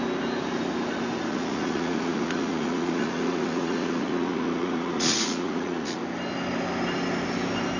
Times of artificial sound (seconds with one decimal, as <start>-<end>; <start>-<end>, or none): 1.3-6.0